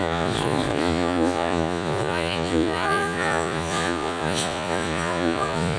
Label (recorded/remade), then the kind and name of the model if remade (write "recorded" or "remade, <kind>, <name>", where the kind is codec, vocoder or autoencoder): remade, vocoder, Vocos